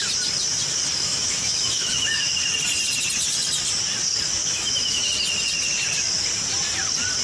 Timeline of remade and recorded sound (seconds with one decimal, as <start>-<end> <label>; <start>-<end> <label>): 0.0-1.1 recorded; 1.1-2.3 remade; 2.3-4.4 recorded; 4.4-5.1 remade; 5.1-7.2 recorded